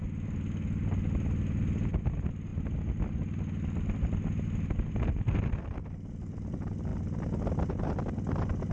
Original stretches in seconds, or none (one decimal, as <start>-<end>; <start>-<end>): 0.0-8.7